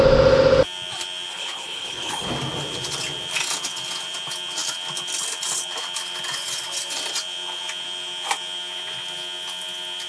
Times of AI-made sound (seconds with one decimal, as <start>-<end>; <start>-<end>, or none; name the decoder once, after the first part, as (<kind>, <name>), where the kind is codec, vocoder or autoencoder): 1.3-2.3 (codec, HILCodec)